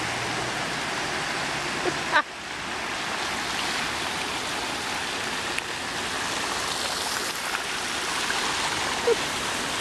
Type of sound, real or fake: real